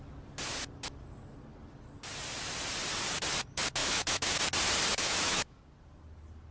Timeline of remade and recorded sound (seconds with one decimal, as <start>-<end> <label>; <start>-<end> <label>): 0.0-3.8 recorded; 3.8-4.4 remade; 4.4-4.9 recorded; 4.9-5.6 remade; 5.6-6.5 recorded